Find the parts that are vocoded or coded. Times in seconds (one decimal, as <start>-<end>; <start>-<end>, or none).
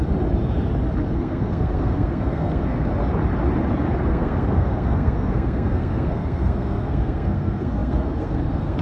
1.1-2.9; 4.1-8.8